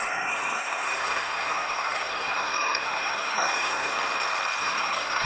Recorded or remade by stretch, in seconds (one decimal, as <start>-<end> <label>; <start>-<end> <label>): 0.0-3.9 remade; 3.9-4.6 recorded; 4.6-5.3 remade